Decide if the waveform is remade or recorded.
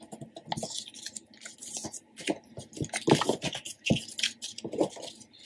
recorded